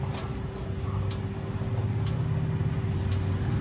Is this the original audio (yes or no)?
yes